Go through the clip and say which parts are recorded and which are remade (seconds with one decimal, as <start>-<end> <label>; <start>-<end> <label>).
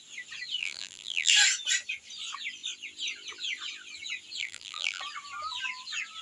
0.0-0.6 recorded; 0.6-1.3 remade; 1.3-4.4 recorded; 4.4-5.0 remade; 5.0-6.2 recorded